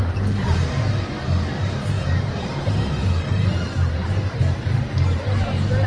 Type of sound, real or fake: fake